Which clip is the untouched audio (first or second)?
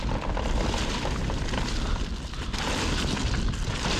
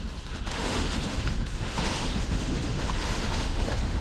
first